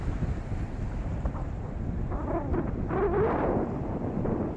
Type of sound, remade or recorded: recorded